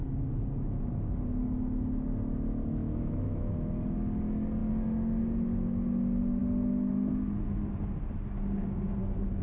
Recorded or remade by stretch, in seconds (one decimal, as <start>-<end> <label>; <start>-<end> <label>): 0.0-2.8 recorded; 2.8-3.7 remade; 3.7-9.4 recorded